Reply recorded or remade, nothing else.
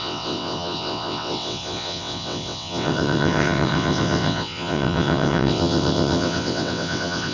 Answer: remade